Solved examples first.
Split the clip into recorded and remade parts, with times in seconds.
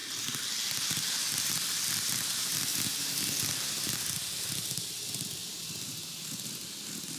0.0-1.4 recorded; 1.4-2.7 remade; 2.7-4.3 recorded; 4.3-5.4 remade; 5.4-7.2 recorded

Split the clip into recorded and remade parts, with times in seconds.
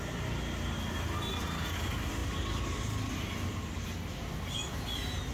0.0-5.3 recorded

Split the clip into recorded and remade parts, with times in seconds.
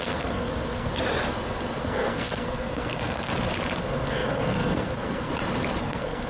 0.0-0.9 remade; 0.9-1.8 recorded; 1.8-3.3 remade; 3.3-3.8 recorded; 3.8-5.3 remade; 5.3-5.8 recorded; 5.8-6.3 remade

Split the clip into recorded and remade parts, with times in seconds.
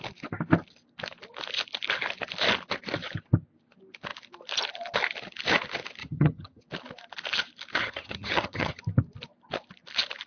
0.0-6.0 recorded; 6.0-6.6 remade; 6.6-7.8 recorded; 7.8-8.8 remade; 8.8-10.3 recorded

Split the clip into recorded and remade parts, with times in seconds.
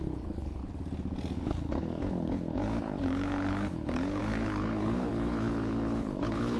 0.0-0.6 remade; 0.6-1.4 recorded; 1.4-6.6 remade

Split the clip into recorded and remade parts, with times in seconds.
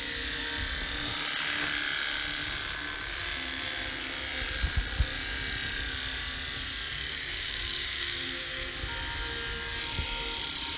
0.0-7.1 recorded; 7.1-8.7 remade; 8.7-10.8 recorded